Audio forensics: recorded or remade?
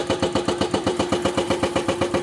remade